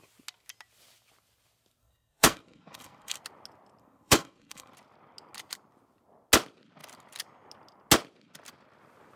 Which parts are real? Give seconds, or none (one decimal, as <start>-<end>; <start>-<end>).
0.0-1.8; 3.2-3.8; 4.7-9.2